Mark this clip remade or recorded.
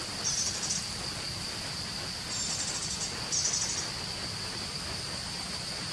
recorded